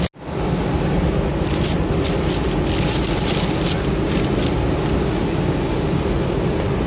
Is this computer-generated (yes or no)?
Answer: no